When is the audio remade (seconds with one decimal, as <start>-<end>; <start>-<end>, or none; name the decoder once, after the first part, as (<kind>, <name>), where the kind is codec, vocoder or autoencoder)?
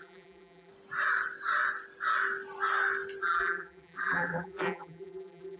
0.0-0.7 (vocoder, BigVGAN v2); 3.2-5.6